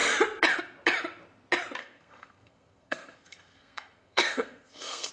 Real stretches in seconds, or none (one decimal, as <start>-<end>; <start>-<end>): 0.0-1.8